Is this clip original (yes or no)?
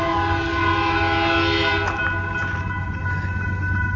yes